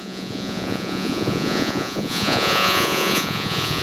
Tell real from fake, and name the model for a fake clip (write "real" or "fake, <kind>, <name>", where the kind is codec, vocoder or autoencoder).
fake, vocoder, Vocos